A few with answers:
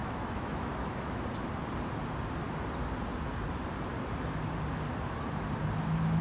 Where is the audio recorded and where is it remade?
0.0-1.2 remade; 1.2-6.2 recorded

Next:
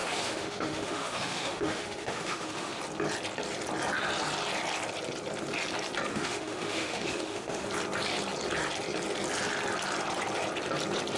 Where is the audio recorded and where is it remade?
0.0-2.8 remade; 2.8-6.1 recorded; 6.1-7.7 remade; 7.7-11.2 recorded